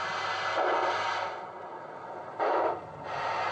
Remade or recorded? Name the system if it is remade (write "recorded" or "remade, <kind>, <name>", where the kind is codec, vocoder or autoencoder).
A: recorded